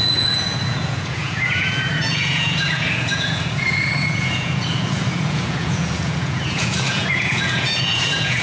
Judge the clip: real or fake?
fake